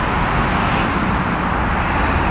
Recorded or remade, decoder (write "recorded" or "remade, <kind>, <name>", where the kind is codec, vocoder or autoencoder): recorded